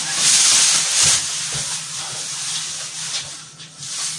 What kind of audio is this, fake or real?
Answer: real